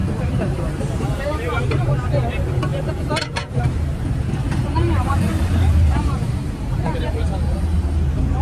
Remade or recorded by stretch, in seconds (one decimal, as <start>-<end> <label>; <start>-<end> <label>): 0.0-2.1 remade; 2.1-2.7 recorded; 2.7-7.0 remade; 7.0-8.4 recorded